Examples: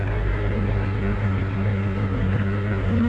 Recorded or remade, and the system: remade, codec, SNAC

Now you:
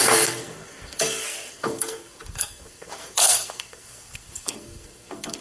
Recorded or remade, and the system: remade, codec, SNAC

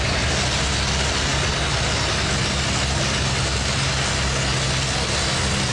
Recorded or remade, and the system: recorded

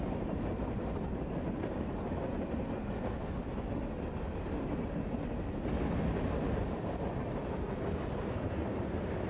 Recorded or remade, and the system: recorded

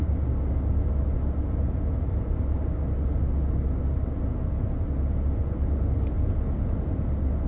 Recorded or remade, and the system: recorded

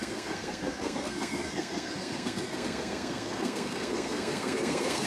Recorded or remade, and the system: remade, codec, SNAC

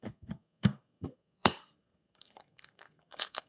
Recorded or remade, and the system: remade, codec, SNAC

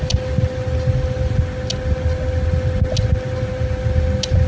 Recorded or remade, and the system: recorded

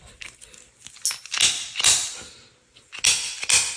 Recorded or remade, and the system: recorded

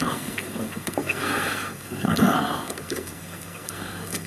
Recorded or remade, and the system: remade, codec, SNAC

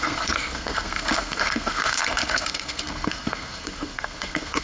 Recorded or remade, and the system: remade, codec, SNAC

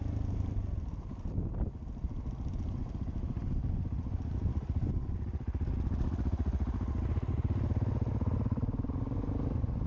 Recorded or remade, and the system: recorded